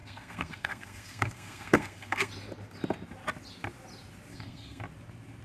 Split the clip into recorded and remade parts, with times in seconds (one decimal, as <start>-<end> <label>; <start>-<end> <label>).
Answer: 0.0-2.3 remade; 2.3-4.3 recorded; 4.3-4.8 remade; 4.8-5.4 recorded